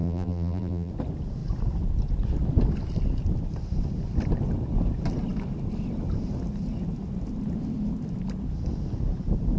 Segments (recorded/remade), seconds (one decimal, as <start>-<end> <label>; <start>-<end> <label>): 0.0-0.9 remade; 0.9-9.6 recorded